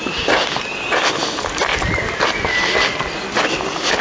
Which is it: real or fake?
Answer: real